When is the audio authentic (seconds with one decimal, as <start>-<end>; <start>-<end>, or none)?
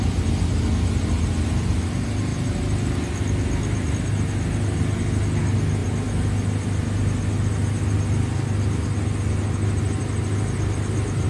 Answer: 0.0-11.3